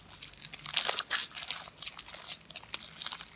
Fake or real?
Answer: real